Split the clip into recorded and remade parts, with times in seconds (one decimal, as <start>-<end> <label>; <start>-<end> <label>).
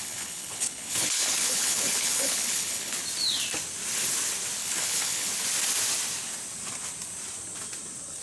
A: 0.0-3.0 remade; 3.0-4.6 recorded; 4.6-5.3 remade; 5.3-8.2 recorded